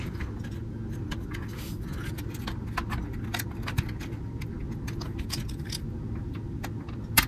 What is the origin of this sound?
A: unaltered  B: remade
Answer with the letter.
A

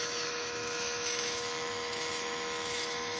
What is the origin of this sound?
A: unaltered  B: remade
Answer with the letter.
B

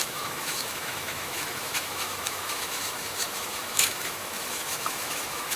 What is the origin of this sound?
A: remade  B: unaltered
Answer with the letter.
A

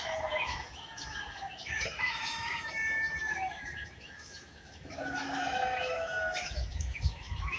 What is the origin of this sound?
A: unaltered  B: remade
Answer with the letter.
B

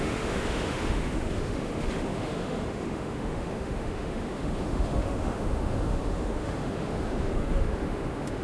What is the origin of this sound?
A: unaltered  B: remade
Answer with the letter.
B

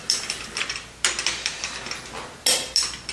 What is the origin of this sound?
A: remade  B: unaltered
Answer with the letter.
B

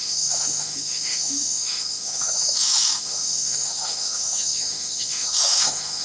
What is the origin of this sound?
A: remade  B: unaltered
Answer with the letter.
A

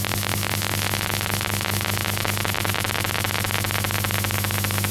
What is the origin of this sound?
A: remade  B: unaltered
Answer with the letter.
A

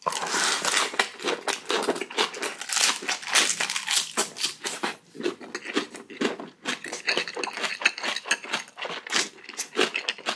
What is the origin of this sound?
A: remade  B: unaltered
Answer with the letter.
B